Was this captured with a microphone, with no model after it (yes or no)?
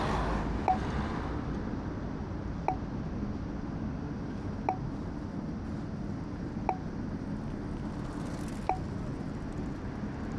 yes